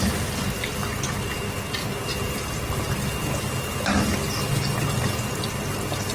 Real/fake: real